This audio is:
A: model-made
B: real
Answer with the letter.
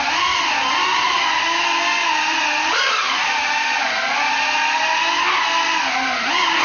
B